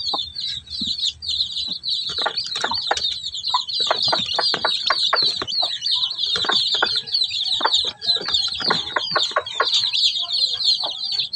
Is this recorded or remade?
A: recorded